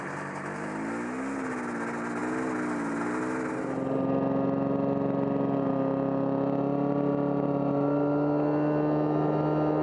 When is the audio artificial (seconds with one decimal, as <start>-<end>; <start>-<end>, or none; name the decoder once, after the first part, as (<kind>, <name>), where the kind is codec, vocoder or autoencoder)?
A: none